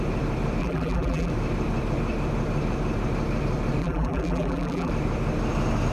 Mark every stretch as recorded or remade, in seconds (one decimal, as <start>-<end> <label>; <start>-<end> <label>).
0.0-0.6 recorded; 0.6-1.3 remade; 1.3-3.8 recorded; 3.8-4.9 remade; 4.9-5.9 recorded